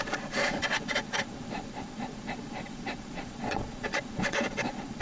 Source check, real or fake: fake